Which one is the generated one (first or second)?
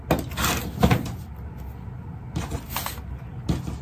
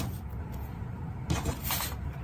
second